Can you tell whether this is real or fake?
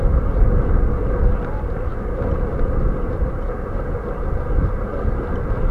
real